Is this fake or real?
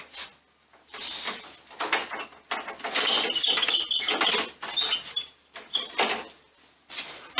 real